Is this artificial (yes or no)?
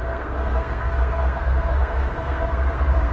yes